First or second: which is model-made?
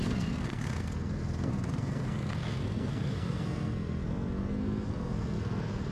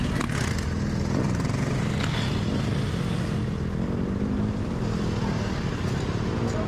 first